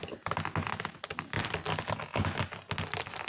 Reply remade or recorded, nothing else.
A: recorded